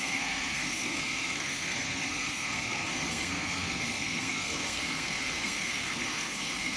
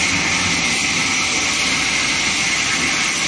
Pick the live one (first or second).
second